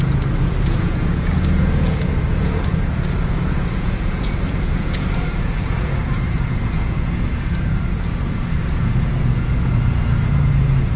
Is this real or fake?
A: fake